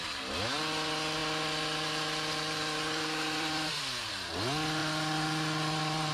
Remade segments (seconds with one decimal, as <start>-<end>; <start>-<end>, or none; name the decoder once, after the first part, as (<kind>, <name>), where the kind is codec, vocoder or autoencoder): 1.2-4.1 (vocoder, BigVGAN v2); 4.8-6.1